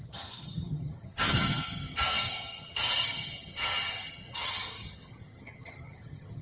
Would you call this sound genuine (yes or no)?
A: no